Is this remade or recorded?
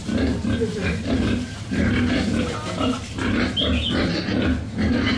recorded